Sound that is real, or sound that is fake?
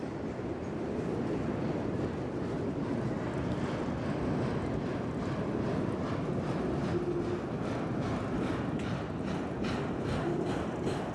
real